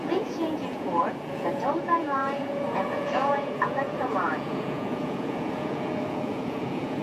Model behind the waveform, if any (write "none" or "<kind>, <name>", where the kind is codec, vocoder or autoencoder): vocoder, Vocos